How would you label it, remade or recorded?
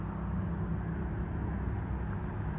recorded